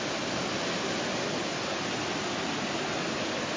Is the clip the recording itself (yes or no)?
yes